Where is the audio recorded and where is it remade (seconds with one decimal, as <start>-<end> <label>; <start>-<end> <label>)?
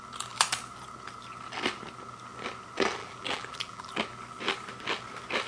0.0-3.0 recorded; 3.0-3.9 remade; 3.9-5.5 recorded